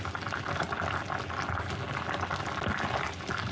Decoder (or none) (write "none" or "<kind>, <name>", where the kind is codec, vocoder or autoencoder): none